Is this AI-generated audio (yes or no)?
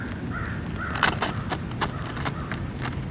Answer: no